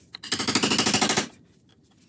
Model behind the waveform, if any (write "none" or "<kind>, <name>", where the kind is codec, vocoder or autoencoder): none